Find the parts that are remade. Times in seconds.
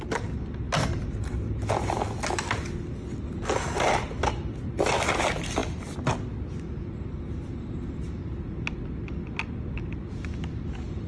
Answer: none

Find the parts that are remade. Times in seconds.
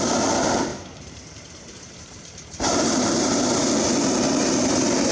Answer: 0.7-3.4 (vocoder, BigVGAN v2)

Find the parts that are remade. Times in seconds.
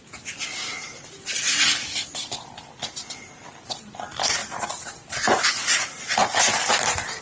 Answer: 4.4-7.2 (vocoder, BigVGAN v2)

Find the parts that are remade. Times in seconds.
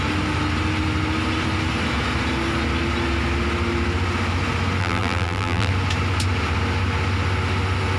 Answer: 4.8-5.7 (vocoder, BigVGAN v2)